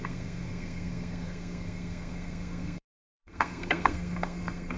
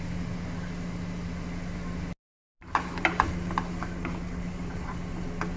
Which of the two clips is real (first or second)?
second